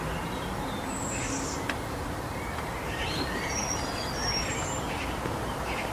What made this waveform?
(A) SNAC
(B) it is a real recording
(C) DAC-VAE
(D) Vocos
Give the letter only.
B